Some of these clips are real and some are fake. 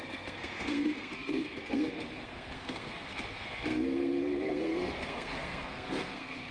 fake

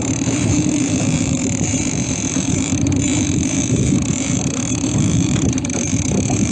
fake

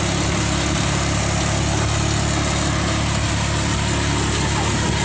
real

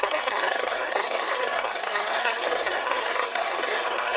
fake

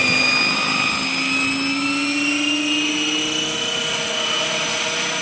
real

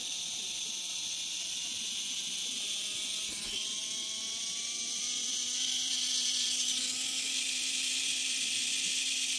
real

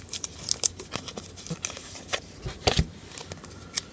real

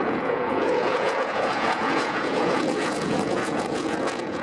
fake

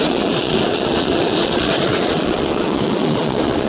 fake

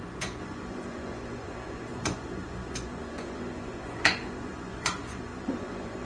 fake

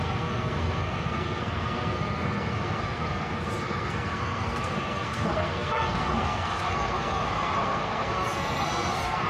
fake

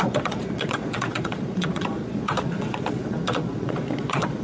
fake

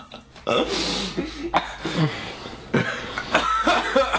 real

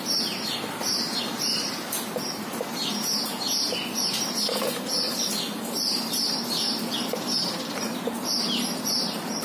real